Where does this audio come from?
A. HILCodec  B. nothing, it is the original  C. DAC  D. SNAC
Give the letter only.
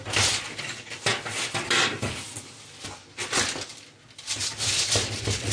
B